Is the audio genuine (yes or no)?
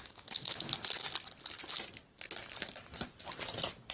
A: yes